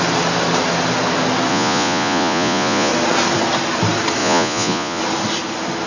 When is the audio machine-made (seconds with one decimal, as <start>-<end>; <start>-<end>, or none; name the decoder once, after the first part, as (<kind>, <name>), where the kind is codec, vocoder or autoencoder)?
1.5-2.9 (vocoder, Vocos); 4.2-5.0